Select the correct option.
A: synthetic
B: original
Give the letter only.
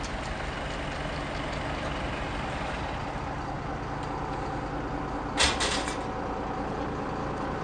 B